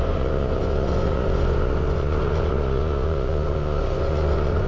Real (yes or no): no